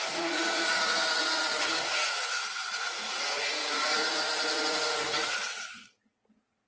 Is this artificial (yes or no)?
yes